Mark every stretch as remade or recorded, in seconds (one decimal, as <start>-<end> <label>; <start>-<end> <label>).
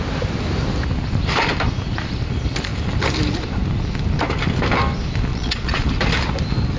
0.0-5.3 recorded; 5.3-5.9 remade; 5.9-6.8 recorded